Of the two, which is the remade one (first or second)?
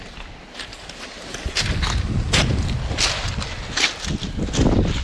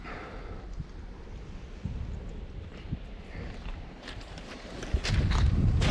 second